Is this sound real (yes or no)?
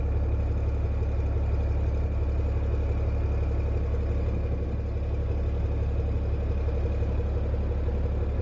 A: yes